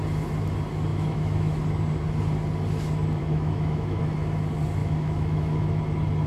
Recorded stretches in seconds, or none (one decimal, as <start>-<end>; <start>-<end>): 0.0-0.9; 1.6-3.2; 4.0-4.8; 5.8-6.3